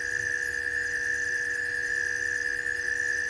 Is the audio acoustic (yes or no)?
yes